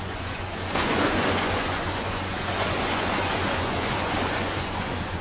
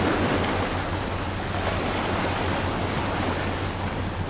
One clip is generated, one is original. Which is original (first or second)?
second